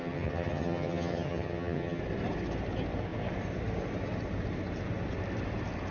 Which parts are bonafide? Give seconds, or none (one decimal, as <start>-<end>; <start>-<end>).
2.0-5.9